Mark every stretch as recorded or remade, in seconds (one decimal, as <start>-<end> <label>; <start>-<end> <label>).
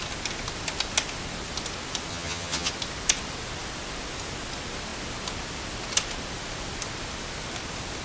0.0-2.1 recorded; 2.1-2.7 remade; 2.7-8.0 recorded